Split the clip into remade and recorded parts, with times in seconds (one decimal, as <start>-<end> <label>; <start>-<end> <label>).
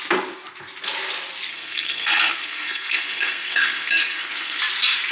0.0-1.5 recorded; 1.5-4.6 remade; 4.6-5.1 recorded